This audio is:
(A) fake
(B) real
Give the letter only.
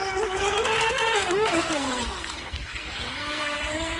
A